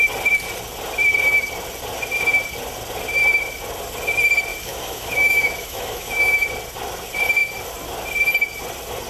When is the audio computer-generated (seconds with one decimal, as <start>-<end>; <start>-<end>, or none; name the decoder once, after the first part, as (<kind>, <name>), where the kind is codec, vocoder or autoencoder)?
4.5-6.5 (autoencoder, DAC-VAE)